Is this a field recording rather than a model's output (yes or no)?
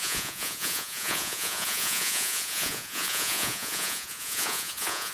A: no